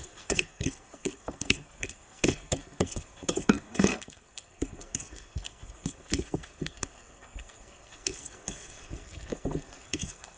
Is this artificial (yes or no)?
yes